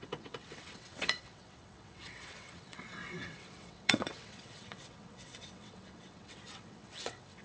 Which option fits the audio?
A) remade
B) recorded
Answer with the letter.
A